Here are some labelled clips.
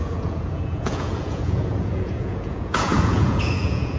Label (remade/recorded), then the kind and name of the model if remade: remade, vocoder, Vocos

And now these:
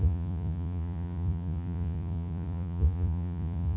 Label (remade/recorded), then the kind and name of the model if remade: remade, vocoder, Vocos